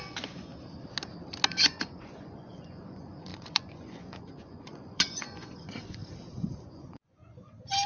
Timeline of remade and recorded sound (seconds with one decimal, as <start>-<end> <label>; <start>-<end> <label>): 0.0-0.5 remade; 0.5-1.6 recorded; 1.6-6.0 remade; 6.0-6.7 recorded; 6.7-7.2 remade; 7.2-7.9 recorded